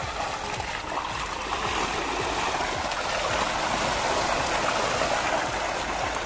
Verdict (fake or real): fake